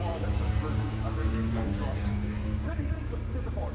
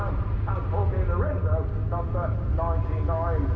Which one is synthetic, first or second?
first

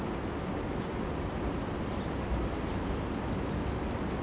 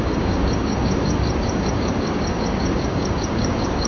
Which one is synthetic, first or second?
second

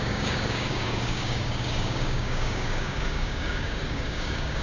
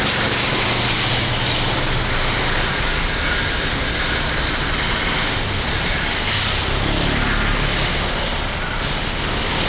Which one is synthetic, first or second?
first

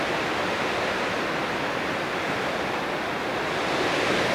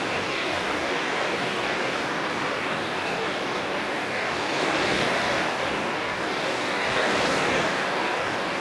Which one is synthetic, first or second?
second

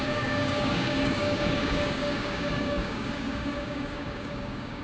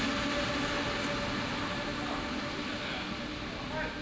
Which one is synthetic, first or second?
first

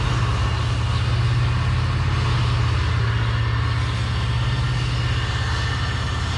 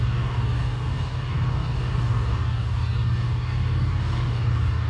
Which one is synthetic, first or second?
second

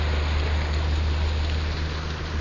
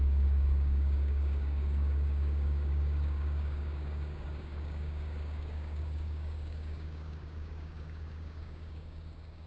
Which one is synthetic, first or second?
second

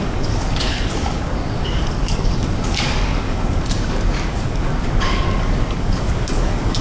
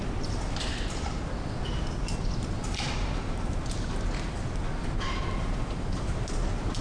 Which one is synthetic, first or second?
first